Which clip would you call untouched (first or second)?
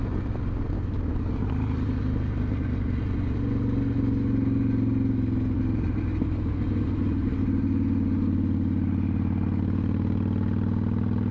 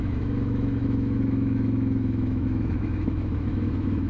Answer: first